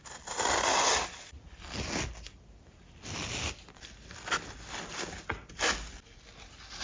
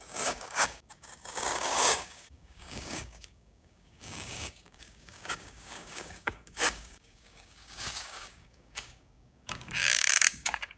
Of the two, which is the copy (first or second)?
second